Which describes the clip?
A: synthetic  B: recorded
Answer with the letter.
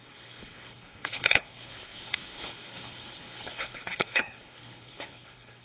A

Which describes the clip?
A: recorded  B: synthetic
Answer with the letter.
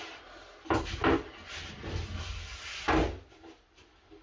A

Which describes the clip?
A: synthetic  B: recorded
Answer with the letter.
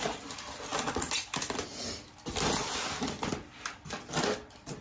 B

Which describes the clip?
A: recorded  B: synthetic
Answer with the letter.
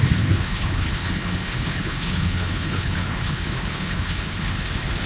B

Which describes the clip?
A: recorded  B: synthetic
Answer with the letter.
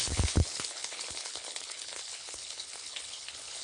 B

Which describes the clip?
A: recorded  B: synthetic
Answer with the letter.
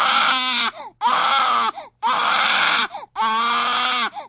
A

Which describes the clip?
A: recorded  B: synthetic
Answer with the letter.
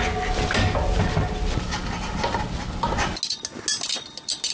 A